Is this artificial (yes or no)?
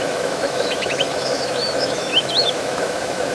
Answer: yes